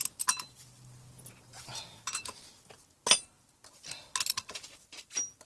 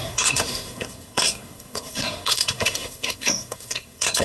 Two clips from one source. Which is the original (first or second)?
first